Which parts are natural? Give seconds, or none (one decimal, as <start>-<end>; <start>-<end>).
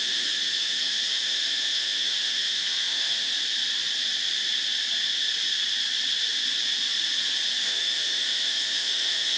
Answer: 3.3-7.6